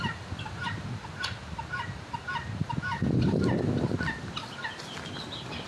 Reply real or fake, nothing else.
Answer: real